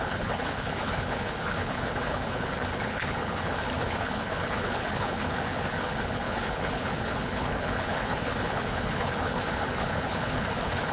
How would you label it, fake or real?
fake